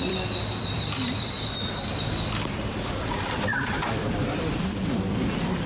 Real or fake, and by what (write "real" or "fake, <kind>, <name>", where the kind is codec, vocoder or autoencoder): fake, vocoder, BigVGAN v2